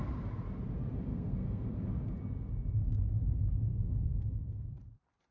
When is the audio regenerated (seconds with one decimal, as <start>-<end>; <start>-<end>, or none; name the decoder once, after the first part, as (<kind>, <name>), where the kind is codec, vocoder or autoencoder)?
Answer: 1.1-1.8 (codec, SNAC); 3.7-4.7

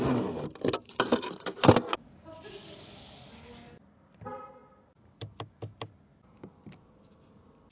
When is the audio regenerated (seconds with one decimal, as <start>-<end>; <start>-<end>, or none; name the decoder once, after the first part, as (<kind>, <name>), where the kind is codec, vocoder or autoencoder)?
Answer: none

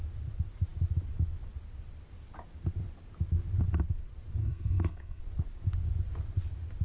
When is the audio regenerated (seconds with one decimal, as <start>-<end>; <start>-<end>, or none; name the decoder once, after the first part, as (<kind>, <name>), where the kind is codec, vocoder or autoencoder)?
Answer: 4.4-5.2 (codec, SNAC)

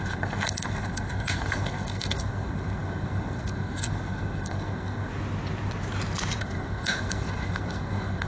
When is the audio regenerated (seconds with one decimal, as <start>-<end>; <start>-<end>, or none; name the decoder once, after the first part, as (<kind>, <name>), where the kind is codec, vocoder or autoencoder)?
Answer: 0.0-5.1 (codec, SNAC); 6.4-8.3

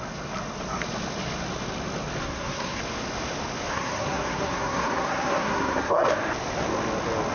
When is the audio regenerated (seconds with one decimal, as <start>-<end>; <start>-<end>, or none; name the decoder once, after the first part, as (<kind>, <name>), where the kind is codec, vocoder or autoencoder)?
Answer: 2.2-2.8 (codec, SNAC); 3.7-6.1

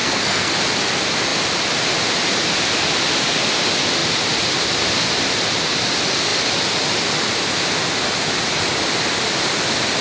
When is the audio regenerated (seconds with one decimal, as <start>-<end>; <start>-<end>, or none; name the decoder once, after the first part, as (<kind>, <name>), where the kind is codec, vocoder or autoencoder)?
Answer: 0.0-0.5 (codec, SNAC)

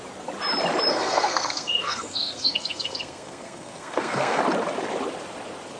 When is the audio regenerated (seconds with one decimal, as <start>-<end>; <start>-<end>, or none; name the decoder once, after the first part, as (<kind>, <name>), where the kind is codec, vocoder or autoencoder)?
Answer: 0.9-4.4 (codec, SNAC)

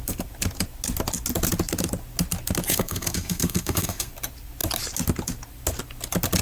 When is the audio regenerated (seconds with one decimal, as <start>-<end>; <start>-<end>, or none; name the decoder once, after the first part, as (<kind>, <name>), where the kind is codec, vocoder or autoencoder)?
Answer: 2.7-4.1 (codec, SNAC)